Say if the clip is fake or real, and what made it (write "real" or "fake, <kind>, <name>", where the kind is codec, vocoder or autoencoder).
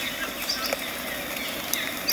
real